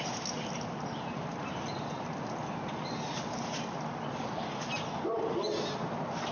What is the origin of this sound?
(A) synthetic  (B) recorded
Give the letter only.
B